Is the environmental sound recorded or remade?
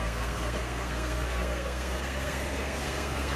remade